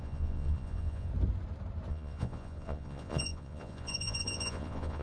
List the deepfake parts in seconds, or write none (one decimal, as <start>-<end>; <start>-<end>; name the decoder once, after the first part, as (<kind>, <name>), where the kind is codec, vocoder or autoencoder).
0.0-1.1 (vocoder, Vocos); 1.9-5.0